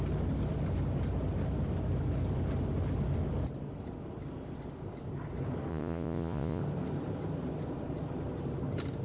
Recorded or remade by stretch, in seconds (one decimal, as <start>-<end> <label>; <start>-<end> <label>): 0.0-5.7 recorded; 5.7-6.6 remade; 6.6-9.0 recorded